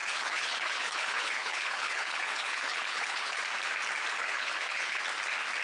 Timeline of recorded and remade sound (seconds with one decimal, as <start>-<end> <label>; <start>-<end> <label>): 0.0-3.4 remade; 3.4-4.2 recorded; 4.2-5.0 remade; 5.0-5.6 recorded